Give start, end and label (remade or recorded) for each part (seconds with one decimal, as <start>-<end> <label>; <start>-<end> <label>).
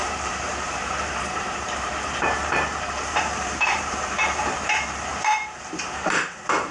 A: 0.0-6.7 remade